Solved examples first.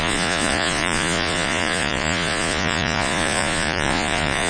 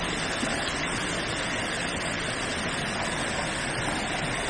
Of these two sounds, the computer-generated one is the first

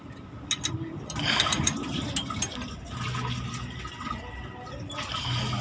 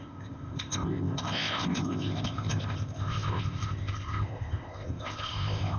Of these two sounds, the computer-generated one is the second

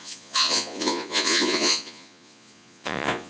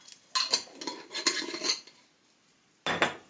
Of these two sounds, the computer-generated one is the first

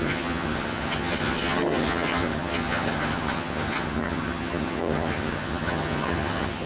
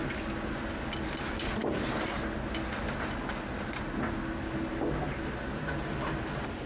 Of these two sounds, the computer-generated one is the first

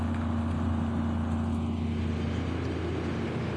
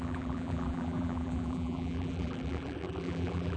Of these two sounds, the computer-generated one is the second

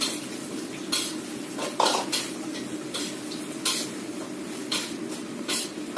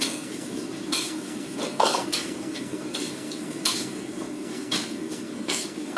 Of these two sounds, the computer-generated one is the second